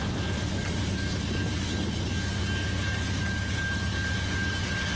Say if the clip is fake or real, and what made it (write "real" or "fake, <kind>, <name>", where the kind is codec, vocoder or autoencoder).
real